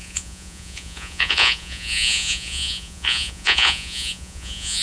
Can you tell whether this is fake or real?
fake